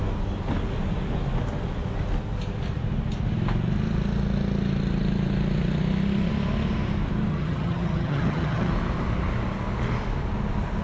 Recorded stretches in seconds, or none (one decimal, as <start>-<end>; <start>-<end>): 0.0-7.3; 8.7-10.8

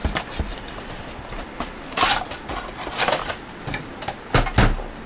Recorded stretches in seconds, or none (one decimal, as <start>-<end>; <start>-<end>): 0.0-5.1

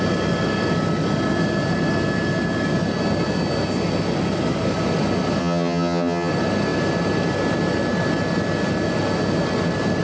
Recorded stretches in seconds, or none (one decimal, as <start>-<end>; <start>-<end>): 0.0-5.4; 6.3-10.0

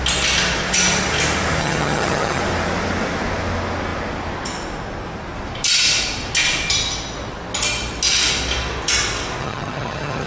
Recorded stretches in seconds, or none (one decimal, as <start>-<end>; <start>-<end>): 0.0-1.6; 2.4-9.4

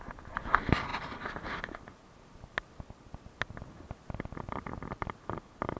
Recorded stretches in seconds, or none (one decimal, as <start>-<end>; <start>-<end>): 0.0-5.8

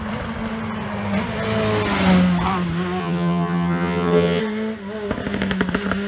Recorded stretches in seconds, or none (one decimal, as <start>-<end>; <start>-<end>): 0.0-3.0; 4.4-6.1

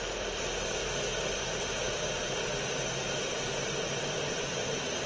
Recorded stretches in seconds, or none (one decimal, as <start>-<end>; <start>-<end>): 0.0-5.1

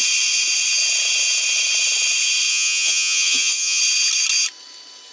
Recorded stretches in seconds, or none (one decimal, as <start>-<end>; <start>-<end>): 0.0-2.5; 3.8-5.1